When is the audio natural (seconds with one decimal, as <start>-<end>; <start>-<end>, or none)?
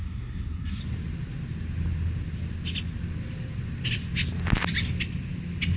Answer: 0.8-5.8